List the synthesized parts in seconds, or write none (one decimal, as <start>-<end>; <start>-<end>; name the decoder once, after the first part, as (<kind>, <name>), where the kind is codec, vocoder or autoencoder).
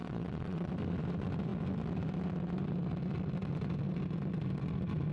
0.0-0.7 (vocoder, WaveNeXt)